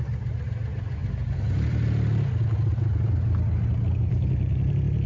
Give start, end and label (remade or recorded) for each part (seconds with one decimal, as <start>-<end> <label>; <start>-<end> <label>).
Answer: 0.0-5.1 recorded